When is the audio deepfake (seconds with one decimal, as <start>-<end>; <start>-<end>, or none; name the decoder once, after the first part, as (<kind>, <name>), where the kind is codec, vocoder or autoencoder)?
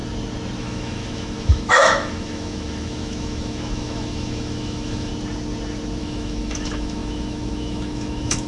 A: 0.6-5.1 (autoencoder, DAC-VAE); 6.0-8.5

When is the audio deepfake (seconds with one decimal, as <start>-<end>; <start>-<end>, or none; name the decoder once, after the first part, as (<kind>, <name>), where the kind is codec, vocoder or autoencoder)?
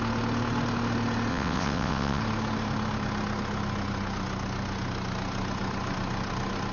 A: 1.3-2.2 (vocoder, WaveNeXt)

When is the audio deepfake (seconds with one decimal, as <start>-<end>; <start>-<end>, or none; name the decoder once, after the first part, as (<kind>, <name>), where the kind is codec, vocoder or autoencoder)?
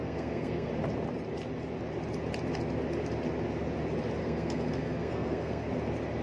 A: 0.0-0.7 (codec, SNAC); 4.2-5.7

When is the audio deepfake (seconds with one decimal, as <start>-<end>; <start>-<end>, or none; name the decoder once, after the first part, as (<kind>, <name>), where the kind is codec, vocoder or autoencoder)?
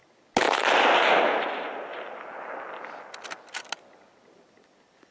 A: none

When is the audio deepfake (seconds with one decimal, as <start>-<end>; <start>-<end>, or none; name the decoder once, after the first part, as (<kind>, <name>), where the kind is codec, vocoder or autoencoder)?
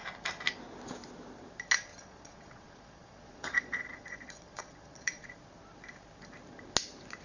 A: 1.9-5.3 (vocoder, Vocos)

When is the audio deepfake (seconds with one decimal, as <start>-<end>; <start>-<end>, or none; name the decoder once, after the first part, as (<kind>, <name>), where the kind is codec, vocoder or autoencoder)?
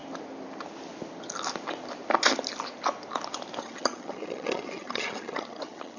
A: 3.6-6.0 (vocoder, HiFi-GAN)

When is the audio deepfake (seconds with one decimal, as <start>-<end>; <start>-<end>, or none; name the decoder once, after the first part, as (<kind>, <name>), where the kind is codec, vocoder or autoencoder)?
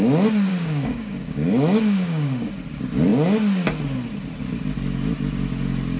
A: 0.5-2.5 (codec, DAC)